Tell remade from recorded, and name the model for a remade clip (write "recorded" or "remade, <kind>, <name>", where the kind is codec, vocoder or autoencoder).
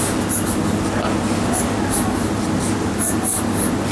recorded